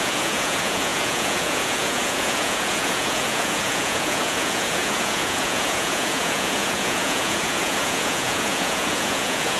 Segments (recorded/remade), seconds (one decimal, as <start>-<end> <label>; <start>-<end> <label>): 0.0-9.6 remade